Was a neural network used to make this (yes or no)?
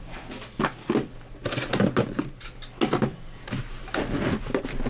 no